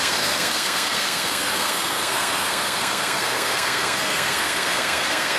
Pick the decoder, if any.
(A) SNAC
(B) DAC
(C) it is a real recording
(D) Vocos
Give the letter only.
A